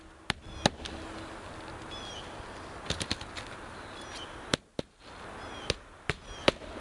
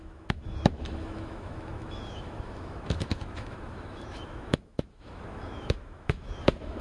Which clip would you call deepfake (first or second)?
second